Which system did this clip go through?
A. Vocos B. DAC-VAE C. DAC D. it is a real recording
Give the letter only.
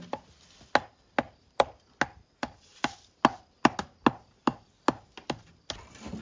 D